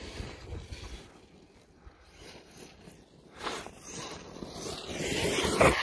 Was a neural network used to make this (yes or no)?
no